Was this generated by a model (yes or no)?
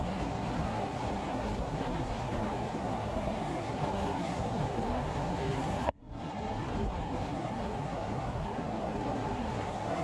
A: yes